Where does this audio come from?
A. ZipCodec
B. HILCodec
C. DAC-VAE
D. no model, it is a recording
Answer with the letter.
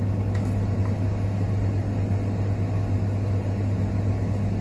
D